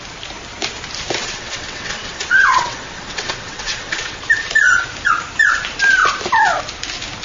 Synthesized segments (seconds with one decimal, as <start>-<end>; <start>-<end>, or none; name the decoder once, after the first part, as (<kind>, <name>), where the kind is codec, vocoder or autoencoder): 1.2-4.2 (vocoder, WaveNeXt)